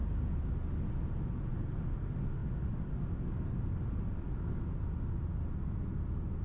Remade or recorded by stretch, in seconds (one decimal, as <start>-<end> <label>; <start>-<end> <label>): 0.0-1.5 recorded; 1.5-2.0 remade; 2.0-2.4 recorded; 2.4-2.9 remade; 2.9-6.4 recorded